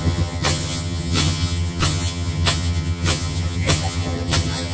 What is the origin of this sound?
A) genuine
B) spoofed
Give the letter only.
B